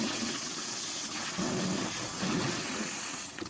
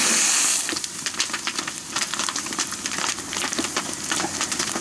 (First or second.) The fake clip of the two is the first